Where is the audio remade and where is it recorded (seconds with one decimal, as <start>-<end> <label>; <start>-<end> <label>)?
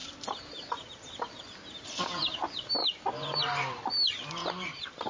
0.0-0.7 remade; 0.7-4.4 recorded; 4.4-5.1 remade